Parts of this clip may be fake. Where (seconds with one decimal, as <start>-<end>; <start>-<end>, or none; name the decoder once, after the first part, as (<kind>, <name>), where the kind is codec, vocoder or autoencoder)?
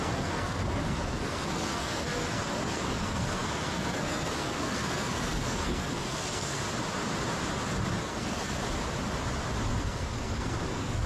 0.0-6.6 (codec, SNAC); 8.0-8.6; 9.8-11.1